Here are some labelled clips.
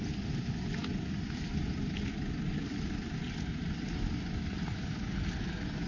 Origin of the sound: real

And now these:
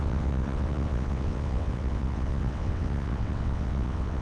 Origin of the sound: fake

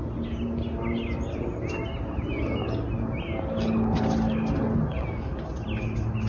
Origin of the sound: real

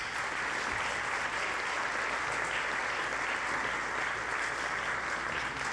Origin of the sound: real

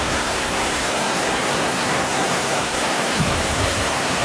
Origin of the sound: fake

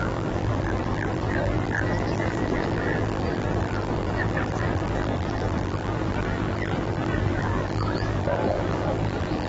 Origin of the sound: fake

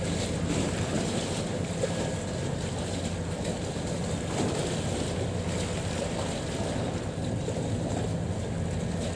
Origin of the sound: real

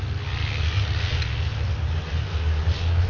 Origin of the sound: real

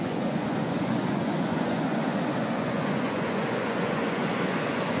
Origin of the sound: fake